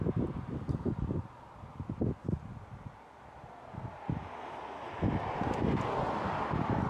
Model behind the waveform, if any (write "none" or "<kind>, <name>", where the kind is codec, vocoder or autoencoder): none